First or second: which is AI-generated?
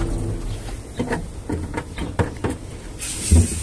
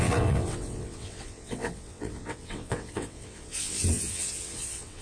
second